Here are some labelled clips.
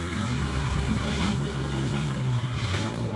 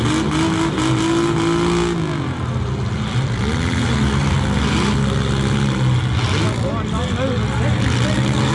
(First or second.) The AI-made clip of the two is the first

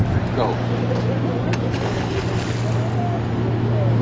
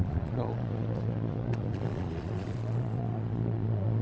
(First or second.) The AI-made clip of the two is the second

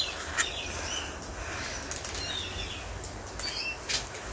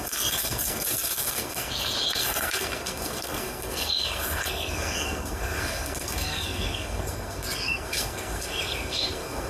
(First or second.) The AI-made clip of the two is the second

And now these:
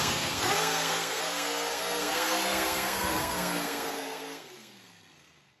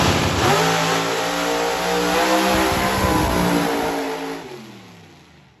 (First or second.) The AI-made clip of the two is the first